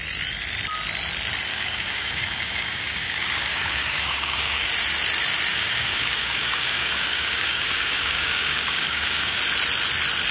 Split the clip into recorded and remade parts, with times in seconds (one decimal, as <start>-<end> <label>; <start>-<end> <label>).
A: 0.0-1.5 recorded; 1.5-4.7 remade; 4.7-5.5 recorded; 5.5-9.4 remade; 9.4-10.3 recorded